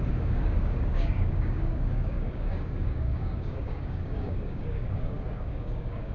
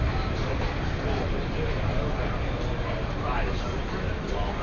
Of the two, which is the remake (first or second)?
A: first